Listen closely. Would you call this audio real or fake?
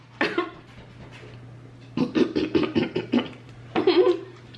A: real